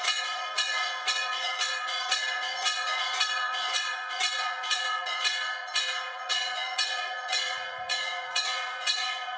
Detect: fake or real fake